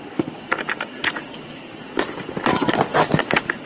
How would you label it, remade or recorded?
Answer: recorded